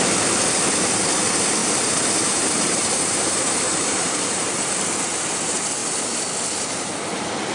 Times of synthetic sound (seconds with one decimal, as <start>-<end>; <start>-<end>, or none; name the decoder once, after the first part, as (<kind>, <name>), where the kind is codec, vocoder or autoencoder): 1.6-4.6 (vocoder, BigVGAN v2)